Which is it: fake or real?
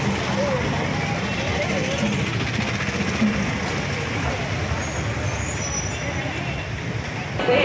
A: real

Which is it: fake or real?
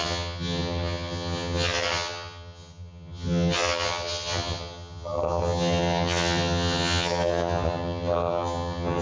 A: fake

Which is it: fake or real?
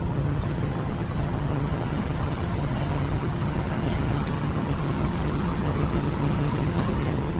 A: fake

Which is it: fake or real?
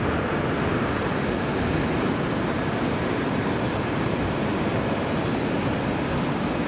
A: real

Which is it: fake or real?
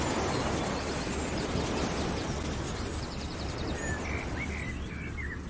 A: real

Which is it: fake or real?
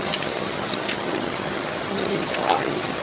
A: fake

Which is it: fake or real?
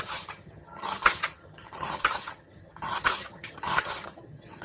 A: fake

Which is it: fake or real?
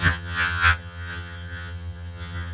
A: fake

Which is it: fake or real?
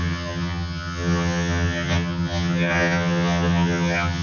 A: fake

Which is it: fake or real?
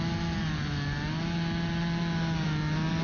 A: real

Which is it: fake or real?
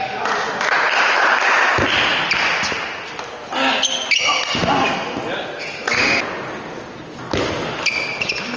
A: real